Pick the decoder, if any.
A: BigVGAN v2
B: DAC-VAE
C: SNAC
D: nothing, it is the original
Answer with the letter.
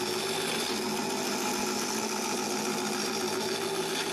D